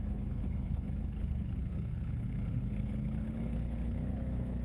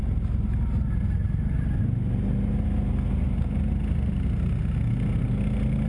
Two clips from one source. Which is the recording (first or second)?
second